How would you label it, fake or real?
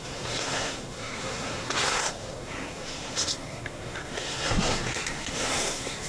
fake